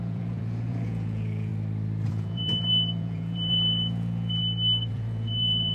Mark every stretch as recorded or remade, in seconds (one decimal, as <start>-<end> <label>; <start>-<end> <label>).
0.0-1.5 remade; 1.5-2.1 recorded; 2.1-4.4 remade; 4.4-4.9 recorded; 4.9-5.7 remade